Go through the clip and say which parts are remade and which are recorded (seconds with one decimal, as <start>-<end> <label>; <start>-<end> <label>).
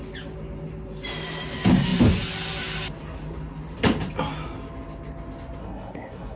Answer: 0.0-5.6 recorded; 5.6-6.4 remade